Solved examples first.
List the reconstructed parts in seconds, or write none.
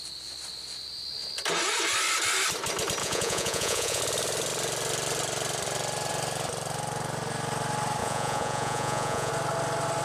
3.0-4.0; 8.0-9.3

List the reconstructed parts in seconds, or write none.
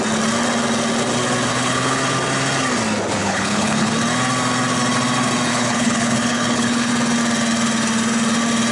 1.5-2.0; 3.2-3.9; 5.5-6.9